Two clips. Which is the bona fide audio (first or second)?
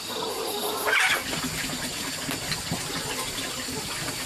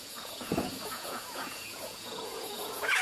first